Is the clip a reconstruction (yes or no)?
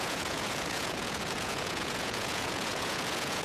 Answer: yes